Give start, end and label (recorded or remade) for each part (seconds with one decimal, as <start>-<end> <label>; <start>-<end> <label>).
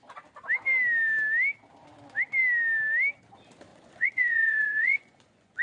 0.0-3.7 recorded; 3.7-5.6 remade